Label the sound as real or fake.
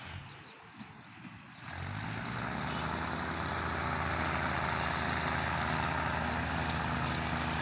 real